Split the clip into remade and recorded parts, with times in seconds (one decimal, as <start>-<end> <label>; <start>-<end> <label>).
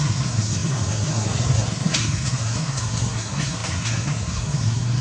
0.0-5.0 remade